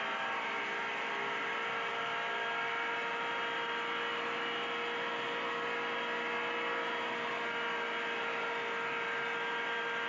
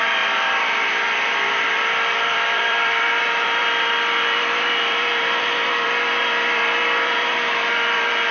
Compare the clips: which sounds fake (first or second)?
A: second